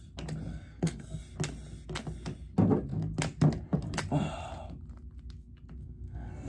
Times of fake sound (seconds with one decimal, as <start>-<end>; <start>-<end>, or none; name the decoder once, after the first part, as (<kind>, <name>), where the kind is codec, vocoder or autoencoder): 0.5-1.2 (codec, SNAC); 5.8-6.5